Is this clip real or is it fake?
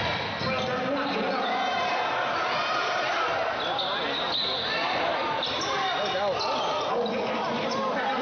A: real